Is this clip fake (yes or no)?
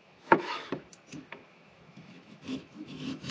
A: yes